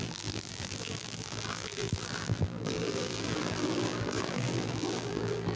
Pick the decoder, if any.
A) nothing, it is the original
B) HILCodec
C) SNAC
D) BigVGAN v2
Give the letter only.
D